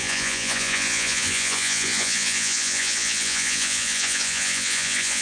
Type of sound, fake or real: fake